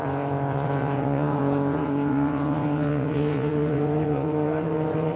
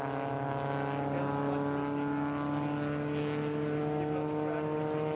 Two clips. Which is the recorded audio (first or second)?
second